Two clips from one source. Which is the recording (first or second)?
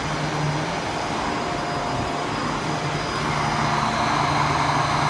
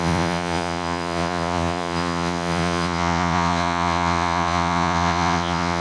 first